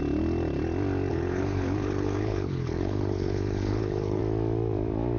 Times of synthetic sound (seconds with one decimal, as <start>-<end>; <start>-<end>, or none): 1.1-4.2